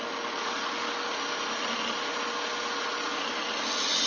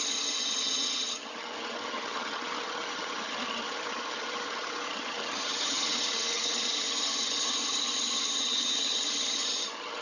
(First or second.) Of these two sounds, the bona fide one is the first